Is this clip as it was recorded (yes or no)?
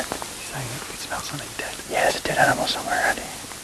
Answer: yes